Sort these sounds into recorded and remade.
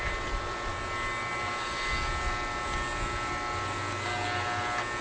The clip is recorded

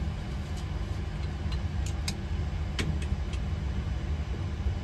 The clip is recorded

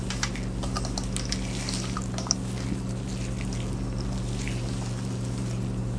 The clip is recorded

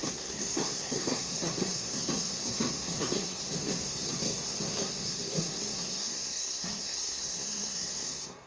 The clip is remade